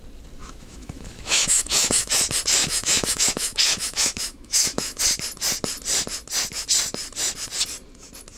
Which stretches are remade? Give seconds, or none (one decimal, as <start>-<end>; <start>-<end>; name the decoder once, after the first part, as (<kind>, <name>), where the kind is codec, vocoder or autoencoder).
0.4-2.2 (autoencoder, DAC-VAE); 2.6-5.0